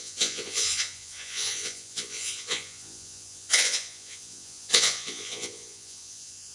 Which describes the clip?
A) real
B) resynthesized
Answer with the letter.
B